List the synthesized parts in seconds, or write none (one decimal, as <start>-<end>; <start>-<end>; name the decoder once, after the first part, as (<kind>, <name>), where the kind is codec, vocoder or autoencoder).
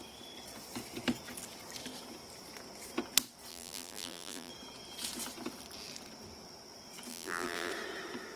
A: 3.5-4.5 (vocoder, BigVGAN v2); 7.1-7.7